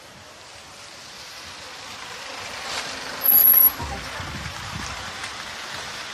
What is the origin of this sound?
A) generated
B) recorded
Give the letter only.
B